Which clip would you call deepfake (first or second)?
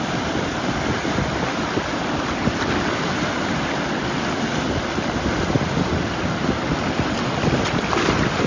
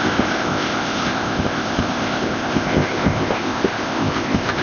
second